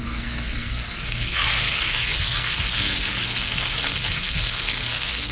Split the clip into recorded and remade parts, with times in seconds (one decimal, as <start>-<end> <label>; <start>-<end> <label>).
0.0-5.3 remade